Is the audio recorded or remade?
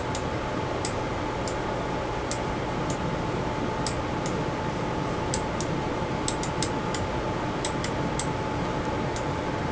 recorded